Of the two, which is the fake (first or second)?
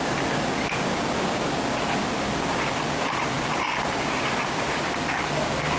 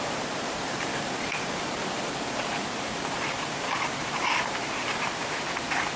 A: second